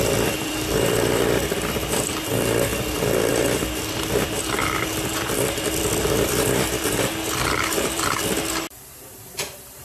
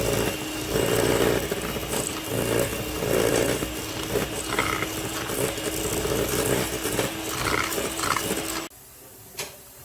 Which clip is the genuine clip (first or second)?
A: second